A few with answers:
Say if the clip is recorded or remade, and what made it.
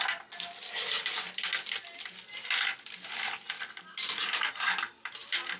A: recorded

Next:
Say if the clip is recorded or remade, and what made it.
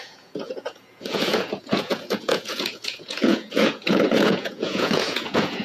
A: remade, vocoder, Vocos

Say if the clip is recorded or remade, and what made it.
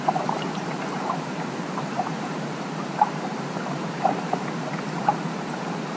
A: remade, vocoder, BigVGAN v2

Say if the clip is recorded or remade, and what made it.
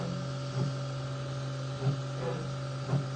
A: recorded